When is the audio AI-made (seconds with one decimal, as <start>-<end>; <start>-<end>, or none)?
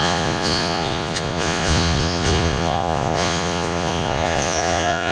0.0-5.1